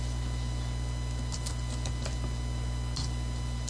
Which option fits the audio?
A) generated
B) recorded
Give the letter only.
B